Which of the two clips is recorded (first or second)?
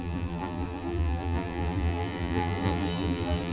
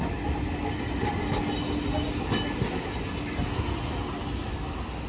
second